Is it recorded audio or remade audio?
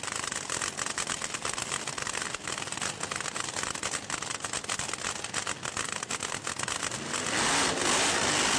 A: recorded